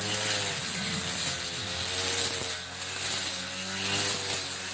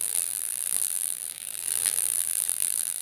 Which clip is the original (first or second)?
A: first